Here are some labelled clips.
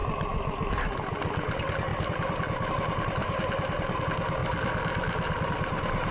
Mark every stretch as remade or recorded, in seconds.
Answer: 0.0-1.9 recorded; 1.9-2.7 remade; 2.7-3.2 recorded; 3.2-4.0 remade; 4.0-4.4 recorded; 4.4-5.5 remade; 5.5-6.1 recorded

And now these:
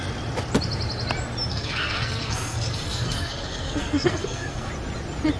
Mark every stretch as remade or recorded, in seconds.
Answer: 0.0-1.5 recorded; 1.5-4.7 remade; 4.7-5.4 recorded